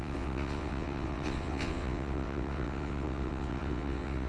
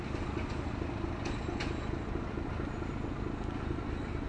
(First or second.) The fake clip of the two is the first